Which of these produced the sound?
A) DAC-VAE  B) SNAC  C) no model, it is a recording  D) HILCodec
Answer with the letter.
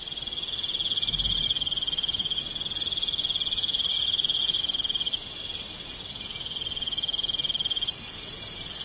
C